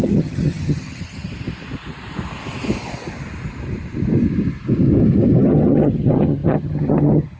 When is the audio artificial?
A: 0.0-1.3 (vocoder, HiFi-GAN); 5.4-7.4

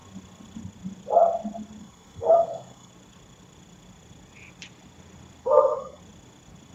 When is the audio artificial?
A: 1.8-2.9 (codec, SNAC); 5.4-6.0

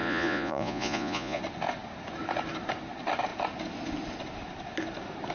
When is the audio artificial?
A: 0.0-1.4 (vocoder, Vocos)

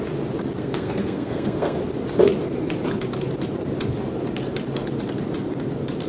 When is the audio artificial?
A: 0.6-1.8 (codec, SNAC)

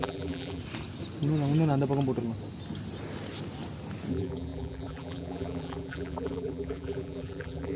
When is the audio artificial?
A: 0.0-0.6 (vocoder, BigVGAN v2); 4.1-7.8